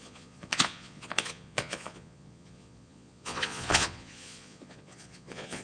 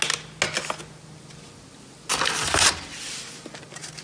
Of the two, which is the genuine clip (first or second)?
second